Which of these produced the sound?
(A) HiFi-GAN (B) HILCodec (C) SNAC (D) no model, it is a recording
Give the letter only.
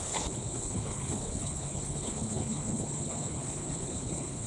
B